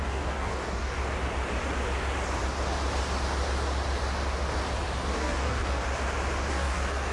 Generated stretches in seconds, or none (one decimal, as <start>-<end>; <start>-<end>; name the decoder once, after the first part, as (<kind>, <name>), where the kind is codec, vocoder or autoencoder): 0.0-1.0 (codec, DAC); 5.1-5.8; 6.5-7.1